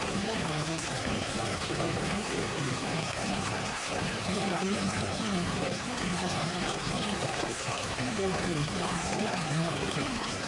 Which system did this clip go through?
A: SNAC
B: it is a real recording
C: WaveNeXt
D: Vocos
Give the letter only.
A